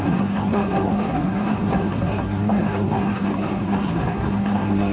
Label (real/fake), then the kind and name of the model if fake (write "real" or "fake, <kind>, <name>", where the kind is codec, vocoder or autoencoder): fake, codec, SNAC